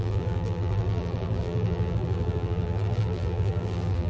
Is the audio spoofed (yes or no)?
yes